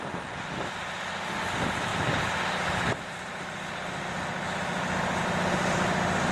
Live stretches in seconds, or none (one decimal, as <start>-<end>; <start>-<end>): 0.0-6.3